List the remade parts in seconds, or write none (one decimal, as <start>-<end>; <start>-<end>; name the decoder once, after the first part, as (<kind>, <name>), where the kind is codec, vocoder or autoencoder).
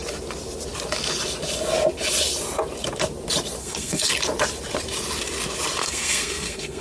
3.6-4.1 (codec, SNAC); 5.8-6.8